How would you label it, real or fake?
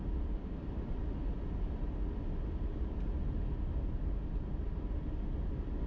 real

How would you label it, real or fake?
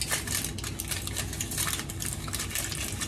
real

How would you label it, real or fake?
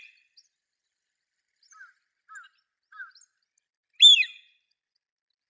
real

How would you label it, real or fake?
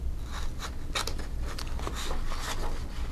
real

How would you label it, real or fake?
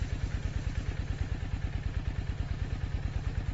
real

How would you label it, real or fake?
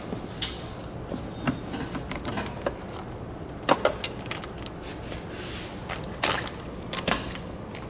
real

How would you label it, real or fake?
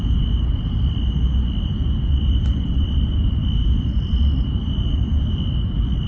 real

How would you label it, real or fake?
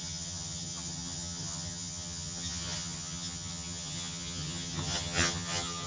fake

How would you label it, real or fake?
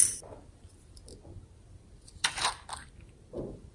fake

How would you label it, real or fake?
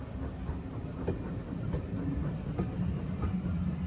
real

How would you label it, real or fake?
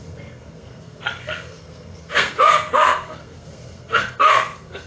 fake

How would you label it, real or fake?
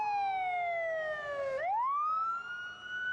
real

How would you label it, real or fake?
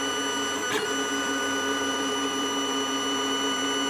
fake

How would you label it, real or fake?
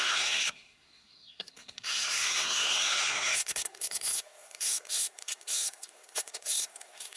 fake